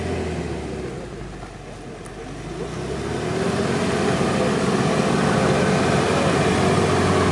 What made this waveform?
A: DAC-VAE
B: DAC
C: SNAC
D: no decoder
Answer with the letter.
D